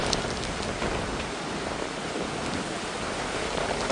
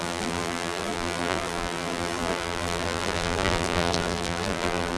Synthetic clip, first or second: second